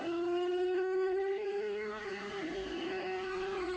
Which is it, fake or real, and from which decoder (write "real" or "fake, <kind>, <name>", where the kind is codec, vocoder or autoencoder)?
fake, codec, SNAC